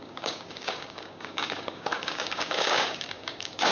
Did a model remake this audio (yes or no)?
yes